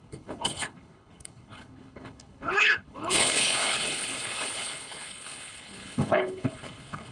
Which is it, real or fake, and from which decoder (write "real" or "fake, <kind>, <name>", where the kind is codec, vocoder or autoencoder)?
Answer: fake, codec, HILCodec